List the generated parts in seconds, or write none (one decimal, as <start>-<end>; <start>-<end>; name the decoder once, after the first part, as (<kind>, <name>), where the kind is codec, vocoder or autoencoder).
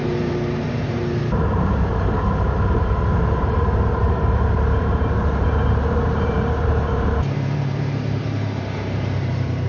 0.0-9.7 (vocoder, BigVGAN v2)